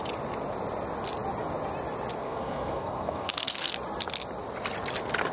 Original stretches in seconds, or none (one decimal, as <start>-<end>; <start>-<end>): 0.0-2.2; 3.7-5.3